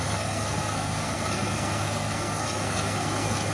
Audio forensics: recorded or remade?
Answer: remade